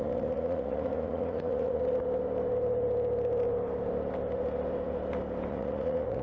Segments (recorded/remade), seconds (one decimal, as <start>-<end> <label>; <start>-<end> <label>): 0.0-1.8 remade; 1.8-5.5 recorded; 5.5-6.2 remade

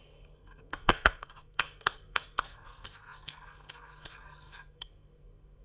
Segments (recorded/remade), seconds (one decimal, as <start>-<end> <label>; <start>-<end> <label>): 0.0-5.6 remade

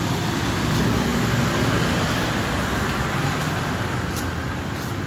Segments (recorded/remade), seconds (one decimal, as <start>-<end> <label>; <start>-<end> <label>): 0.0-5.1 recorded

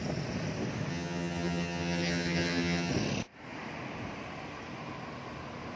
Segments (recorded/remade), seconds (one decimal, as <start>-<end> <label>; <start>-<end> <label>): 0.0-0.9 recorded; 0.9-2.9 remade; 2.9-5.8 recorded